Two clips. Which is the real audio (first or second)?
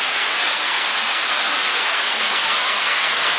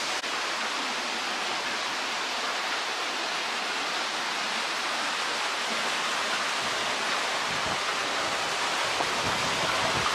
second